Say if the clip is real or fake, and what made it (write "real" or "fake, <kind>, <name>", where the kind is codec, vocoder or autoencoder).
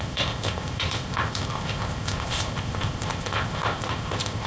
fake, codec, ZipCodec